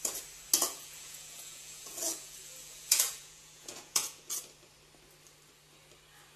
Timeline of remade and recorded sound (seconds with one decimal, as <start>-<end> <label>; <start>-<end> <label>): 0.0-0.6 recorded; 0.6-4.4 remade; 4.4-6.4 recorded